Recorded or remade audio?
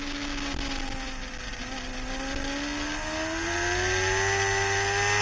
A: recorded